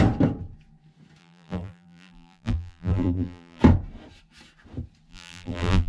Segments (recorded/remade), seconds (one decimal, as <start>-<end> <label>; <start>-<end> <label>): 0.0-1.2 recorded; 1.2-3.6 remade; 3.6-5.1 recorded; 5.1-5.9 remade